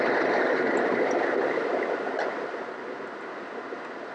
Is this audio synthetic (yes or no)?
no